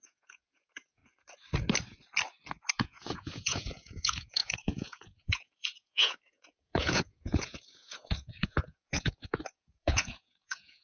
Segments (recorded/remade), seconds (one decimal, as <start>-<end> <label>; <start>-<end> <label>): 0.0-1.0 remade; 1.0-2.7 recorded; 2.7-10.8 remade